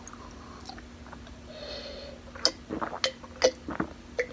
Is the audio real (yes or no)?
yes